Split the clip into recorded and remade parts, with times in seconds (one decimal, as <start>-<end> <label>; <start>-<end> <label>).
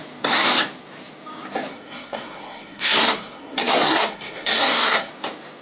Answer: 0.0-1.7 recorded; 1.7-5.1 remade; 5.1-5.6 recorded